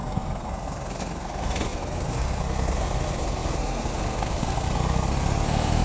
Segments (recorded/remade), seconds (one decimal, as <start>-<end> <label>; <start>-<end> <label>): 0.0-5.8 remade